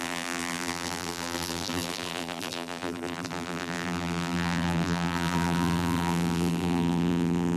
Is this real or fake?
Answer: fake